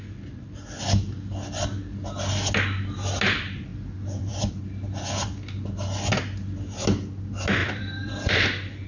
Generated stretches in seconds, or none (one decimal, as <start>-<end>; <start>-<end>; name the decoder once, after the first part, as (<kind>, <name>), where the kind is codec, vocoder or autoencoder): 3.7-4.6 (vocoder, BigVGAN v2); 7.6-8.9